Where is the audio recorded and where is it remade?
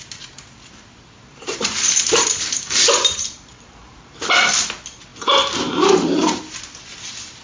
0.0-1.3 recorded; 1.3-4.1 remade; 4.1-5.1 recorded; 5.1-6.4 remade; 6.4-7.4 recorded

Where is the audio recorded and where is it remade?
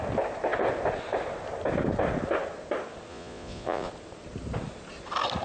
0.0-3.1 recorded; 3.1-3.9 remade; 3.9-5.4 recorded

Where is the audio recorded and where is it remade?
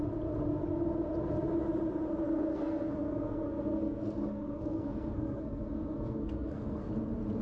0.0-2.5 recorded; 2.5-6.9 remade; 6.9-7.4 recorded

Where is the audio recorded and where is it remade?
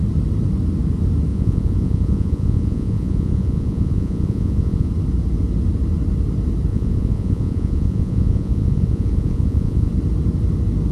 0.0-1.3 recorded; 1.3-4.9 remade; 4.9-6.7 recorded; 6.7-9.9 remade; 9.9-10.9 recorded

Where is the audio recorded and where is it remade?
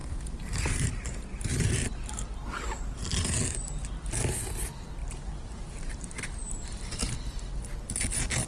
0.0-1.7 remade; 1.7-5.0 recorded; 5.0-7.1 remade; 7.1-8.5 recorded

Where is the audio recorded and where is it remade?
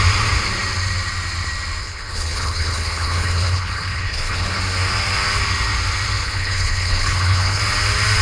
0.0-1.8 recorded; 1.8-4.6 remade; 4.6-6.2 recorded; 6.2-7.6 remade; 7.6-8.2 recorded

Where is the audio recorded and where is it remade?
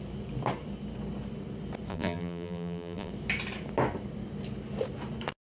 0.0-1.9 recorded; 1.9-3.1 remade; 3.1-5.6 recorded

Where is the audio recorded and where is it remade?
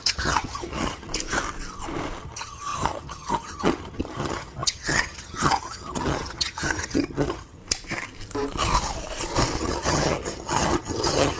0.0-1.1 remade; 1.1-2.2 recorded; 2.2-7.6 remade; 7.6-9.6 recorded; 9.6-11.4 remade